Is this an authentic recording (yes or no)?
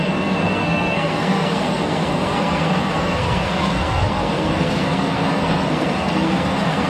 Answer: no